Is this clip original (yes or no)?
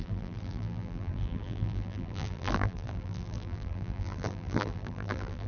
no